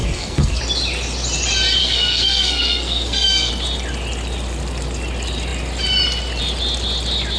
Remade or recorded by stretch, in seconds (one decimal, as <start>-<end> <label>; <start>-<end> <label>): 0.0-0.6 remade; 0.6-1.8 recorded; 1.8-3.5 remade; 3.5-7.4 recorded